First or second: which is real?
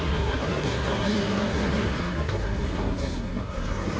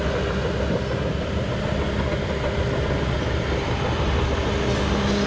second